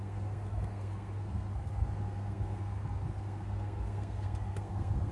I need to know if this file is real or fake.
fake